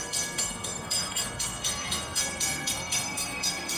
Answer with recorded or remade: remade